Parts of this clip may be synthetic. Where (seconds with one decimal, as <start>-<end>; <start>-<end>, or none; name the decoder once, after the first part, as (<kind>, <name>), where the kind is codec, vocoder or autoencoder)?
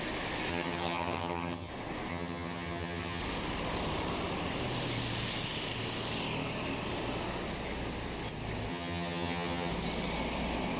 0.5-1.7 (vocoder, HiFi-GAN); 2.1-3.2; 8.7-9.7